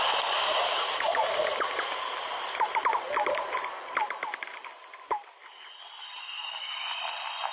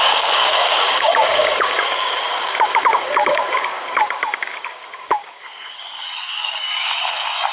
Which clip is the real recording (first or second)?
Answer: first